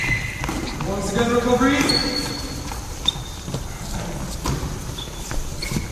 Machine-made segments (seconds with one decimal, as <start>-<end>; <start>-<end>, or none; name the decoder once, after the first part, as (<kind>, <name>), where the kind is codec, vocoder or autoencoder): 2.0-4.0 (vocoder, BigVGAN v2)